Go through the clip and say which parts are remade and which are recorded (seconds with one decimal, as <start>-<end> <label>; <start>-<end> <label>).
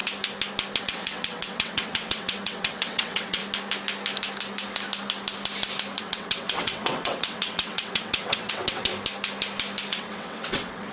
0.0-0.8 recorded; 0.8-3.4 remade; 3.4-6.0 recorded; 6.0-8.9 remade; 8.9-9.9 recorded; 9.9-10.9 remade